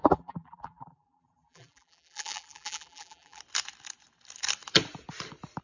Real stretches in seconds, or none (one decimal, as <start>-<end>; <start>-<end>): 3.4-5.6